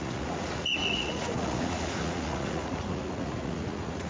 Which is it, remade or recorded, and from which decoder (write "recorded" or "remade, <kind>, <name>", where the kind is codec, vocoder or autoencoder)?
remade, vocoder, Vocos